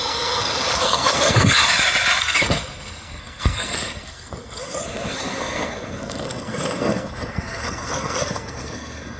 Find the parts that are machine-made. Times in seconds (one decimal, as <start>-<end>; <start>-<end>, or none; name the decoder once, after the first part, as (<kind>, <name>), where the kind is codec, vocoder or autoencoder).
0.0-1.6 (codec, SNAC); 2.2-9.2

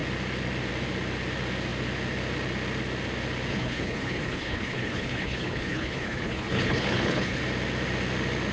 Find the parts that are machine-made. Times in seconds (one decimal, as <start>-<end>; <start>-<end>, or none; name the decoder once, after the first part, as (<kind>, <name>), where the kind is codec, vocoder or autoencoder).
3.5-7.4 (codec, HILCodec)

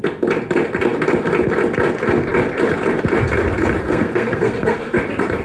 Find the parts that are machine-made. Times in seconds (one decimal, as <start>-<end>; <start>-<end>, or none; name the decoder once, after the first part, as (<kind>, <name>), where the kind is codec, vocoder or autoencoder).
3.8-5.0 (codec, SNAC)

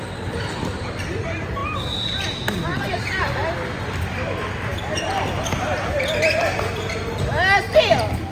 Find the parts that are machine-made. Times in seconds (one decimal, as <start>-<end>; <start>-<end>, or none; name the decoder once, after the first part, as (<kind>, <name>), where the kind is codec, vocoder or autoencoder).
1.6-2.9 (vocoder, BigVGAN v2)

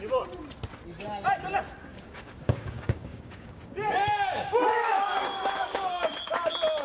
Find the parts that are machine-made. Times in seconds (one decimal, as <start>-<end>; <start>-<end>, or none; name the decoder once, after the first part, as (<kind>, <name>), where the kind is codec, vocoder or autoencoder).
1.9-6.0 (codec, DAC)

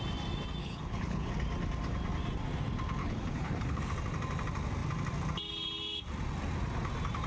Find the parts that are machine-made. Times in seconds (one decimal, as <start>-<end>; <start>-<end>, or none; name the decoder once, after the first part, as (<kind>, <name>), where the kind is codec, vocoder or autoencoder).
0.6-1.3 (codec, HILCodec); 3.0-3.8

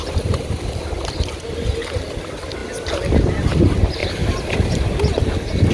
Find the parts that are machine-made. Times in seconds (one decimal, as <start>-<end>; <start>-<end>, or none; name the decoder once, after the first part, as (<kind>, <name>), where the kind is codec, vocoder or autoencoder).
4.0-4.8 (vocoder, BigVGAN v2)

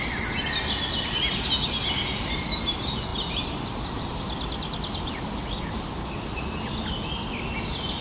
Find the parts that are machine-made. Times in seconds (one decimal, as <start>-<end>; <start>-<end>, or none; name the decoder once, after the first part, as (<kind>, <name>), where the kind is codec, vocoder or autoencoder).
none